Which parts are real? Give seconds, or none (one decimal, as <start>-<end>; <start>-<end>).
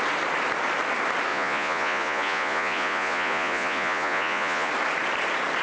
0.0-1.3; 4.7-5.6